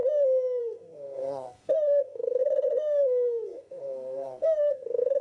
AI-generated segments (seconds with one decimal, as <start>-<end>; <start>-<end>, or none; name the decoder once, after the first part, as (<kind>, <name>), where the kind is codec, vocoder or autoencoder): 0.6-5.2 (codec, SNAC)